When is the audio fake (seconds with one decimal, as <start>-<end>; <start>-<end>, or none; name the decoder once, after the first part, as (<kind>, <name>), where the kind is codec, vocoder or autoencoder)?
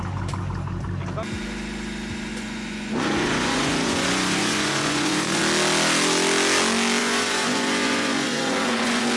2.3-5.4 (vocoder, Vocos); 7.0-9.2